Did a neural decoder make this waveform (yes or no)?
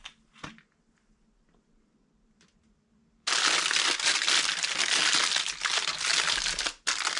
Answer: no